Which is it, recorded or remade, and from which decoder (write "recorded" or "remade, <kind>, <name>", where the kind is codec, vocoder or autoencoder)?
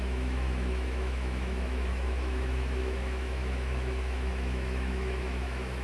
remade, autoencoder, DAC-VAE